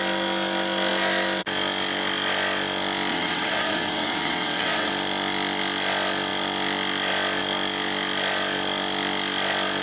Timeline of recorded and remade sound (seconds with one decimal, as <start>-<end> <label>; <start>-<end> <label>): 0.0-3.1 recorded; 3.1-4.9 remade; 4.9-9.8 recorded